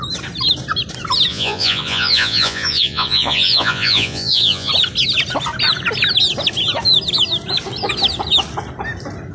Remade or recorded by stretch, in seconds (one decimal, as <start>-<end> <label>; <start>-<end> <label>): 0.0-1.3 recorded; 1.3-4.7 remade; 4.7-9.3 recorded